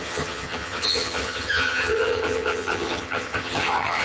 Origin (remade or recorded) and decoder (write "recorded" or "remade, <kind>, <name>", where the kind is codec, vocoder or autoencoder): remade, vocoder, HiFi-GAN